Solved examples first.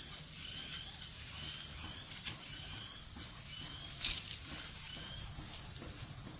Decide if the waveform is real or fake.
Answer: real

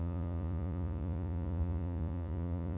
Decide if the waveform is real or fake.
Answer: fake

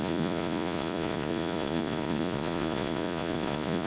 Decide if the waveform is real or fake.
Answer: fake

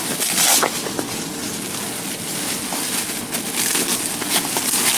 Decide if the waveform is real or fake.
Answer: real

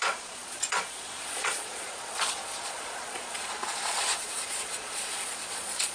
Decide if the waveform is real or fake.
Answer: fake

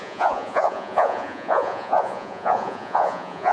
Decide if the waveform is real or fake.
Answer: fake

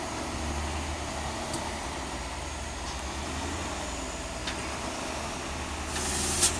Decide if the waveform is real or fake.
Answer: real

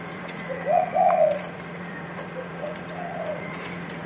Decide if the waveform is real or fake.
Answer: fake